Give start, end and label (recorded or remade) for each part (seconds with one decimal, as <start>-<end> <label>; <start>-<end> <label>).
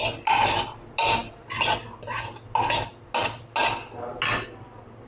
0.0-5.1 recorded